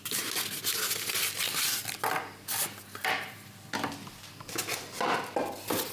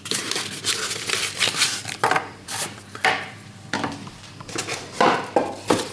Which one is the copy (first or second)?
second